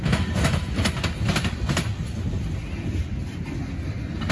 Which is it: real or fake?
real